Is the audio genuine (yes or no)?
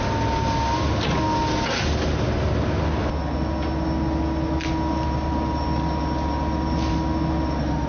yes